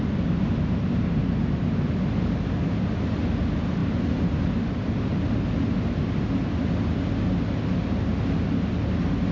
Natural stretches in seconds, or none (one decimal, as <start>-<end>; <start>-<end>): 0.0-0.5; 1.6-9.3